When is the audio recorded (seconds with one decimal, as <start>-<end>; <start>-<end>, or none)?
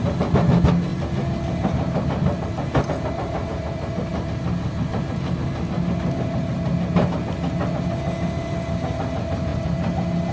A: 0.0-10.3